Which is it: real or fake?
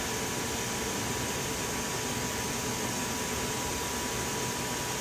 real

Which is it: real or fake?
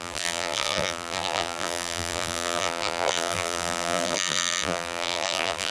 fake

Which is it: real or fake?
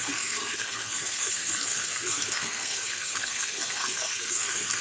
fake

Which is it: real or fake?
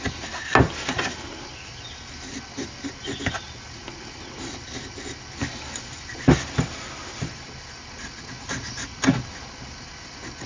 real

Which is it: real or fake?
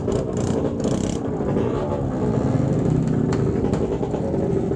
real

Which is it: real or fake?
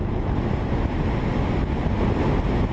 real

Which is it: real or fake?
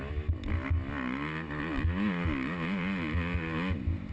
real